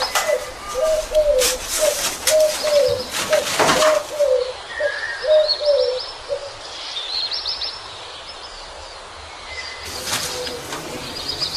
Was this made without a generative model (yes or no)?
yes